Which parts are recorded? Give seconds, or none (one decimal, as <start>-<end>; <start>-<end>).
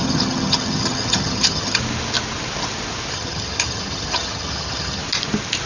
1.8-3.1; 5.0-5.7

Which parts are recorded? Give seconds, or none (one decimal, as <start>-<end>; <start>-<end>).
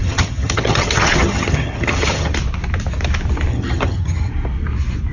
2.3-3.5; 4.3-5.1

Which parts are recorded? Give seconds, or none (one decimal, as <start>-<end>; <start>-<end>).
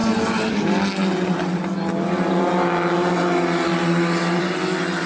0.0-5.1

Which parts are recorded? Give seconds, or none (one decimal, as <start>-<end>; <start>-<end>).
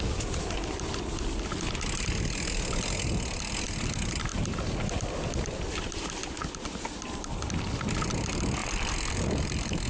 0.0-9.9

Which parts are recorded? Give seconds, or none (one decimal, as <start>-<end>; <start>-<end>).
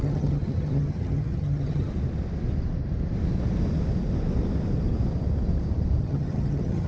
1.9-6.0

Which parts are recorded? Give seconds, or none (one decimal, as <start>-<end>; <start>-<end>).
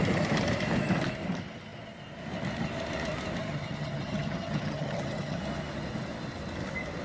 0.0-3.4; 5.4-7.0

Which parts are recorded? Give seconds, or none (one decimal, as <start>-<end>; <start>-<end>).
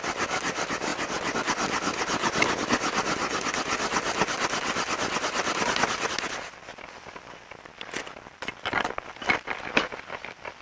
0.0-10.6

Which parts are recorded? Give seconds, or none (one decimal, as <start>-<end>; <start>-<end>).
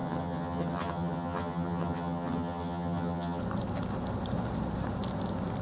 3.4-5.6